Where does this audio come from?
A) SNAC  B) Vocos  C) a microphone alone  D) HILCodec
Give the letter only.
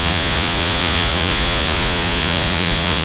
B